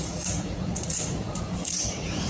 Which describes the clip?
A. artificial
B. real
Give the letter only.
A